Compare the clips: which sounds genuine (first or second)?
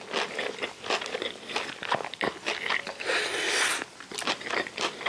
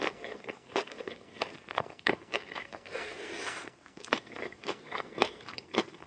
first